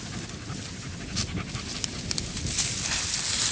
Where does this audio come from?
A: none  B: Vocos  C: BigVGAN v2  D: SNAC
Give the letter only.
A